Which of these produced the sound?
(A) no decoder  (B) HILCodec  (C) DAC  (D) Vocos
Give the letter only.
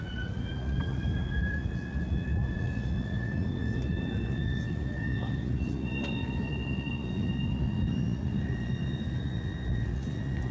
D